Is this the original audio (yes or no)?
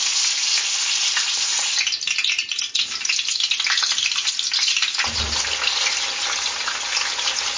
yes